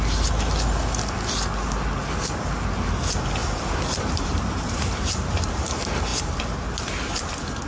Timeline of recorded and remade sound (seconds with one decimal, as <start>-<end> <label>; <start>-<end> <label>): 0.0-3.4 recorded; 3.4-5.6 remade; 5.6-6.1 recorded; 6.1-7.1 remade; 7.1-7.7 recorded